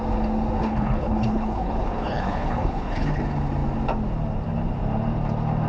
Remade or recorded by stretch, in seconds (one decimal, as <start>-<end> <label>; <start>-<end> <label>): 0.0-0.6 recorded; 0.6-3.2 remade; 3.2-5.7 recorded